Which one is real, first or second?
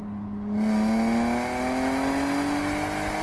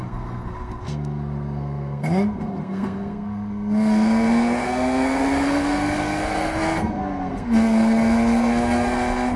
first